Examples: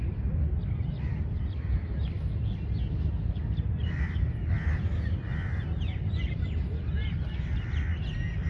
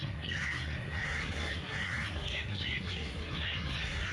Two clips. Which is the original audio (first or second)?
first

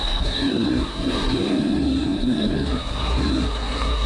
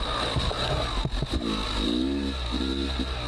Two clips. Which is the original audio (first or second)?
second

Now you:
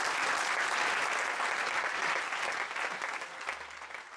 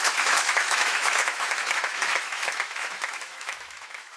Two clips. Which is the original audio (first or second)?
first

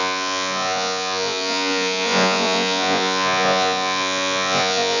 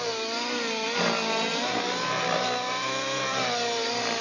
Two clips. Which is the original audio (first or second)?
second